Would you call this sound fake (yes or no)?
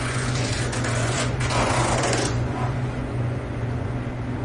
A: yes